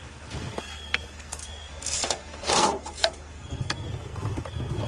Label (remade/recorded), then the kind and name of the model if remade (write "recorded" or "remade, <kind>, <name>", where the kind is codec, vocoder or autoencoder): remade, codec, SNAC